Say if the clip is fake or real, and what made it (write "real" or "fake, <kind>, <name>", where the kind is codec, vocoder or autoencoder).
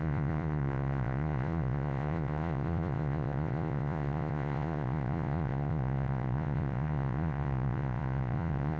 fake, vocoder, Vocos